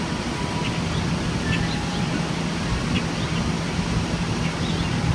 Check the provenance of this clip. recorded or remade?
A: recorded